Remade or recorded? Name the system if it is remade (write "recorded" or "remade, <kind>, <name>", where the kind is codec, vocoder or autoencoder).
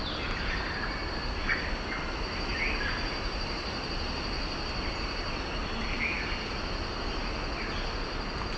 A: recorded